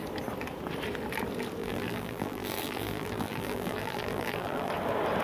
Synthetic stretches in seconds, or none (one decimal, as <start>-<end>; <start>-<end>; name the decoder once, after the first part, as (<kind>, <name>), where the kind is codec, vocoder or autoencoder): 1.6-4.7 (vocoder, BigVGAN v2)